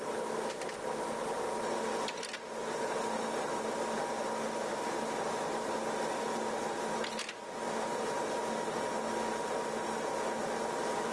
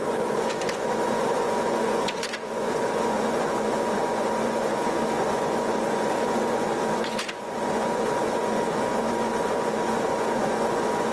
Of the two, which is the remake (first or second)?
second